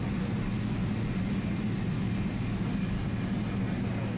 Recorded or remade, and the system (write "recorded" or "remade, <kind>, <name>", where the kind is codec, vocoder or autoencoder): recorded